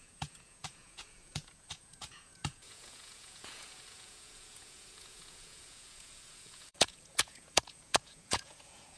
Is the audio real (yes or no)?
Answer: no